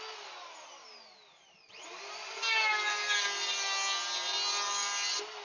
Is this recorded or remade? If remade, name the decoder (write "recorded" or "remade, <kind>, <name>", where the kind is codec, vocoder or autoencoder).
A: recorded